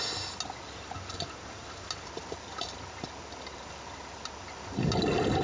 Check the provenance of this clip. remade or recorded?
recorded